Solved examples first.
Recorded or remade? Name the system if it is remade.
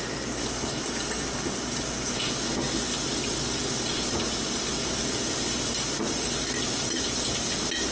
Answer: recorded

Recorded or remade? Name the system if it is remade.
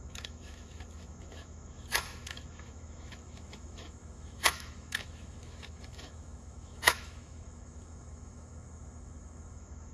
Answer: remade, autoencoder, DAC-VAE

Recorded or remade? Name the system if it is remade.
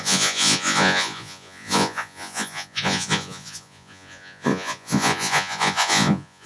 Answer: remade, vocoder, Vocos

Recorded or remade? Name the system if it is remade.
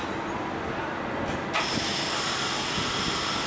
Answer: recorded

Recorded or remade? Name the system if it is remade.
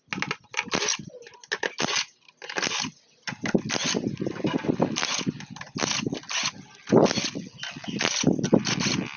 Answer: recorded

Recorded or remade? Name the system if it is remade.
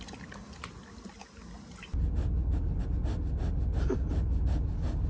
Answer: recorded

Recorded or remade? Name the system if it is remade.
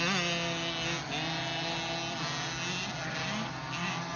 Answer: recorded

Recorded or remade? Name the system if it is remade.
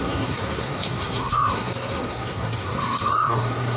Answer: remade, codec, SNAC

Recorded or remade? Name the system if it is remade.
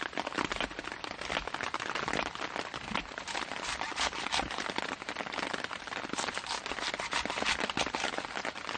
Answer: recorded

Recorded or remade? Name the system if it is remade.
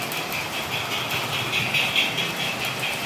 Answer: recorded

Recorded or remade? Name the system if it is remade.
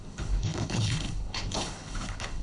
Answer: remade, codec, HILCodec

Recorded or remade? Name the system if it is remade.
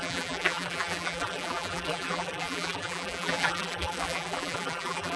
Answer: remade, vocoder, BigVGAN v2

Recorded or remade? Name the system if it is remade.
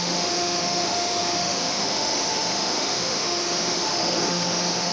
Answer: remade, autoencoder, DAC-VAE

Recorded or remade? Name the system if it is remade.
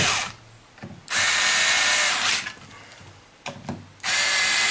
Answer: remade, vocoder, BigVGAN v2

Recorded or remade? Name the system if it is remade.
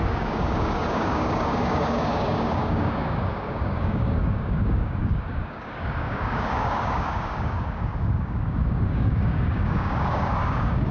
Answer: remade, codec, DAC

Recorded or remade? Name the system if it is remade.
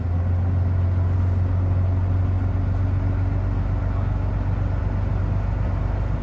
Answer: recorded